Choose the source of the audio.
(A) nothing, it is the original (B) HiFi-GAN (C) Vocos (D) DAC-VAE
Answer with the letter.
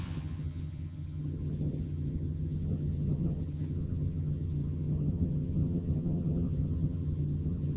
B